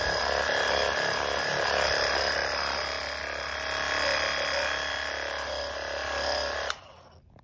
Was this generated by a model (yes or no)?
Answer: no